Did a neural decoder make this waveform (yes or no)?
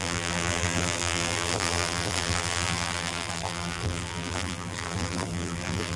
yes